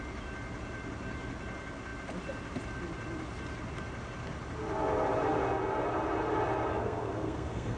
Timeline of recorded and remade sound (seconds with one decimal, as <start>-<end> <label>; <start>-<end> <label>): 0.0-6.7 recorded; 6.7-7.8 remade